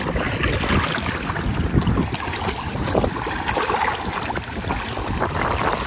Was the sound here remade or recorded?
recorded